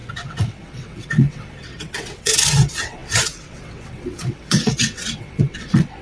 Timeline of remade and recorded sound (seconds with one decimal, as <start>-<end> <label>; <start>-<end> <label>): 0.0-6.0 remade